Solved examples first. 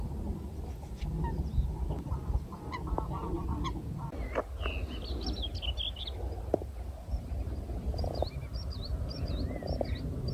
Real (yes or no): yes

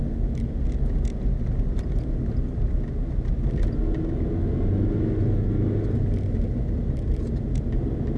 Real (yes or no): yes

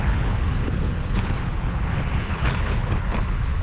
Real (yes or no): no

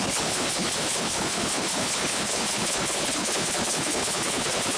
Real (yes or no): no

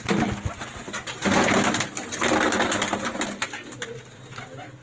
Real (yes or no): yes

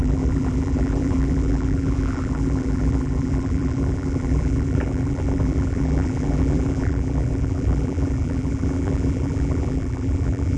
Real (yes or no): no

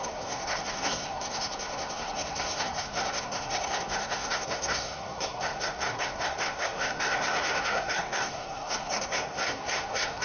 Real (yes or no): no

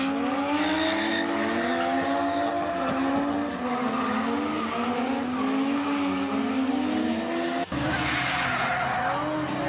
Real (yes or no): yes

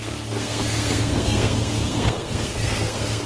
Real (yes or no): no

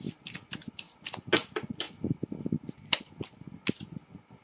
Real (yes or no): yes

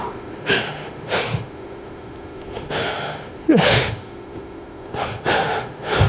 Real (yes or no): no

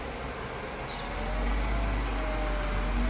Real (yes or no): yes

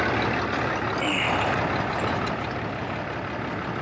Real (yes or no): yes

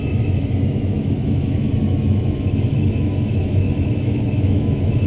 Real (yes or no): no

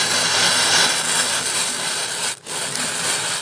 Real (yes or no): yes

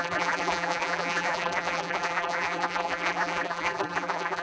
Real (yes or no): no